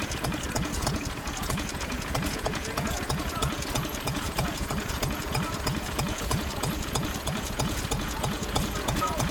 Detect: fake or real fake